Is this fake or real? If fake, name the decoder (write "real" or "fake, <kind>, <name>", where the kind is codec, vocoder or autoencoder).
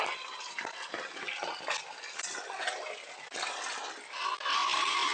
real